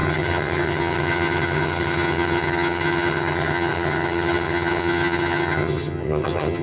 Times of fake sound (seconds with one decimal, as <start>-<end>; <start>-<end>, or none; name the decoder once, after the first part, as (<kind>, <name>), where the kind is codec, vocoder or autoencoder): 0.0-6.6 (vocoder, HiFi-GAN)